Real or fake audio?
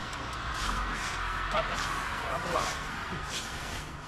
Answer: fake